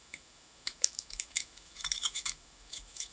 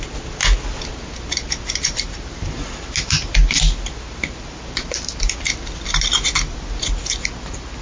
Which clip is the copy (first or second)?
first